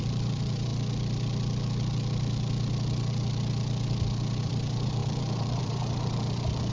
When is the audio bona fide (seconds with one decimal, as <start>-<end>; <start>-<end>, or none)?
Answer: 0.7-4.4